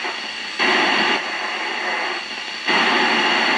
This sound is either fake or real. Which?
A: real